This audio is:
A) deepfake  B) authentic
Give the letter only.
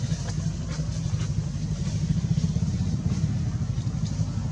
B